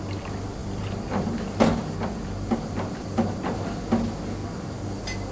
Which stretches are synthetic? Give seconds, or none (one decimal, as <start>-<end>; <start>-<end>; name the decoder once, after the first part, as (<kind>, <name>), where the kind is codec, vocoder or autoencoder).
0.6-3.8 (vocoder, BigVGAN v2)